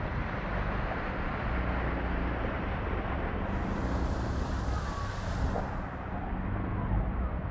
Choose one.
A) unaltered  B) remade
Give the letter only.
A